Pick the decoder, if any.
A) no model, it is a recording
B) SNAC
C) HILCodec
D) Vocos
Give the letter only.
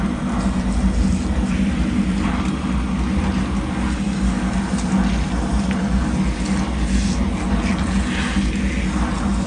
A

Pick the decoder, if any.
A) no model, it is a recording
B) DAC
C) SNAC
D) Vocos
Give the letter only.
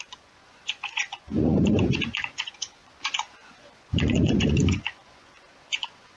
D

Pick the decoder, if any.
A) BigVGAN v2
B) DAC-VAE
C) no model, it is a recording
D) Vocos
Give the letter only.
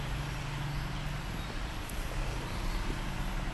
C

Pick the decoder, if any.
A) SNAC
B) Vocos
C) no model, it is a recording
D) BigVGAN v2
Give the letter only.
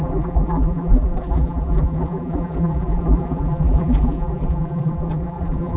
D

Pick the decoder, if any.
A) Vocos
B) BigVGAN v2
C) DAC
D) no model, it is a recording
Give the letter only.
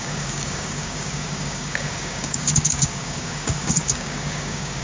C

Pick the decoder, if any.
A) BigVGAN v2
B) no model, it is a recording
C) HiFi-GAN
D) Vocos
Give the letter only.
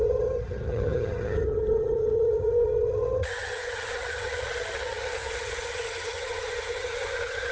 C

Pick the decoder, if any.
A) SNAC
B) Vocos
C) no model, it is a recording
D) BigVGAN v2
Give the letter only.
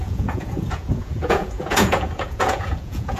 B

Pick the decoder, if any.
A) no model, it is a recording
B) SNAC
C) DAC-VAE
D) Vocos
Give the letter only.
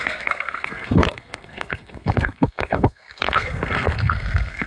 B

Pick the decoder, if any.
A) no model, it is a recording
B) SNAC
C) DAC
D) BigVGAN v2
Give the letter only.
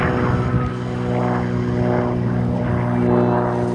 A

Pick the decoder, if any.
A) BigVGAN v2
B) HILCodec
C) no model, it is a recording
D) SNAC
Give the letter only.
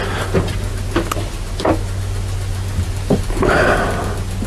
C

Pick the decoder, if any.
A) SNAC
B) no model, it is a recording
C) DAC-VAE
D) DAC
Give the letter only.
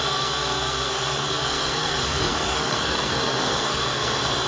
A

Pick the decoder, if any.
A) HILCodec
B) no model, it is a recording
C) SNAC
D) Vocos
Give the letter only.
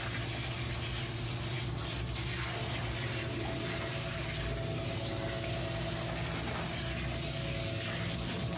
B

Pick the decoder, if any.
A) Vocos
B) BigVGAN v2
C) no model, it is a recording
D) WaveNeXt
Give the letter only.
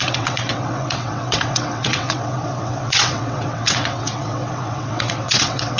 D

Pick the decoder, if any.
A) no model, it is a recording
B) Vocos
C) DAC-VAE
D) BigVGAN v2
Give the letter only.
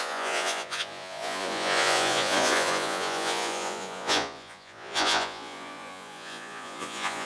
B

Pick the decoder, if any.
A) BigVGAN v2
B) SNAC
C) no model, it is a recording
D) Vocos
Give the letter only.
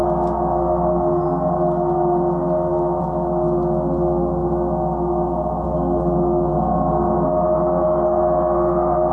C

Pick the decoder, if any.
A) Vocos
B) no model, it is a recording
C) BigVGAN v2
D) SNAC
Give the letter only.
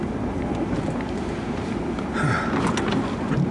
B